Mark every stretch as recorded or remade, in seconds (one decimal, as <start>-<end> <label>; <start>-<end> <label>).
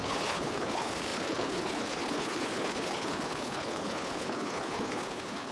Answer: 0.0-5.5 remade